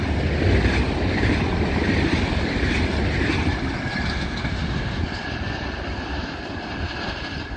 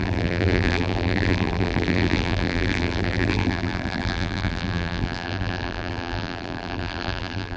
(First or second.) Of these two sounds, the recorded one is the first